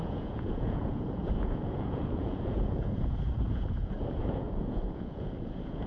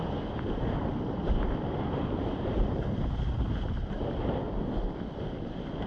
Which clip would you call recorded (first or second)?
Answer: second